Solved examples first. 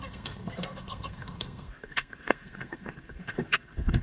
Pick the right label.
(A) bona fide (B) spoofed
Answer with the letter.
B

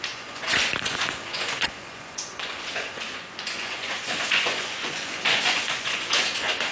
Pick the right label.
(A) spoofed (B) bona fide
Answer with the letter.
A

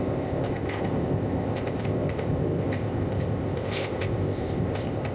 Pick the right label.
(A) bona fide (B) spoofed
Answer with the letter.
B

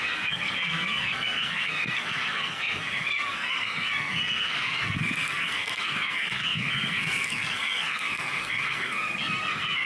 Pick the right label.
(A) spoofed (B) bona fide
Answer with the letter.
A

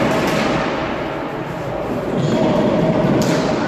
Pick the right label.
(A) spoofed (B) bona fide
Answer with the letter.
B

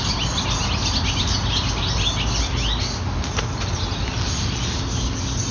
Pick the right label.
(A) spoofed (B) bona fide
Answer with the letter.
B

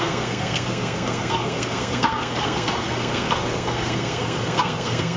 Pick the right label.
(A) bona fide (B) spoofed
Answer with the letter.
B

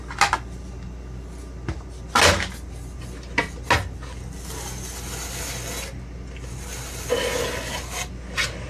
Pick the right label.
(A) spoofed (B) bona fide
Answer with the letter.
B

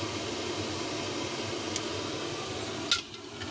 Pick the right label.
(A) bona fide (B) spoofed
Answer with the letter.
A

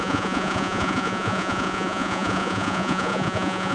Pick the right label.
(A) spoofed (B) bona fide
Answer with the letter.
A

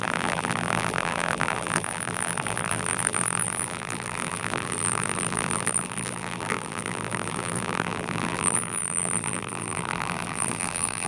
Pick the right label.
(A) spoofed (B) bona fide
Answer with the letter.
A